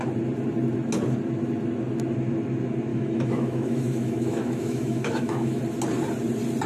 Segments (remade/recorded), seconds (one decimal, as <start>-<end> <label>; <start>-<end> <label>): 0.0-2.9 recorded; 2.9-5.6 remade; 5.6-6.7 recorded